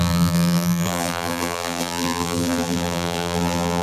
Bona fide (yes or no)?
no